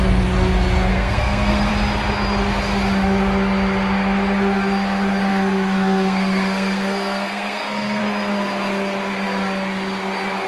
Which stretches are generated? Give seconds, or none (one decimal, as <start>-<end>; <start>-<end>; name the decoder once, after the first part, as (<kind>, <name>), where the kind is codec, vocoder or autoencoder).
0.9-1.7 (codec, SNAC); 5.3-8.0